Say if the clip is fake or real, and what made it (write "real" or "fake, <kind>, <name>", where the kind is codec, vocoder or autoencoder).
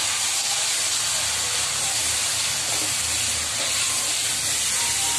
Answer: real